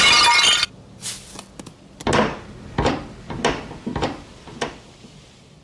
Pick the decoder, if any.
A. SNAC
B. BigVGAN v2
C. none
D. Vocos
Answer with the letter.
C